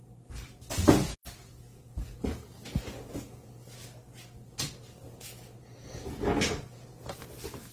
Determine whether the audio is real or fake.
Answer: real